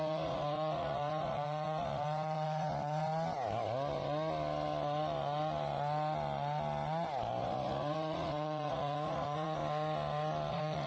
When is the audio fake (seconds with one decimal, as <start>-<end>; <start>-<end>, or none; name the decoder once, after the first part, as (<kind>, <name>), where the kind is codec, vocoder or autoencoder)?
0.0-3.1 (vocoder, Vocos); 7.4-9.6; 10.5-10.9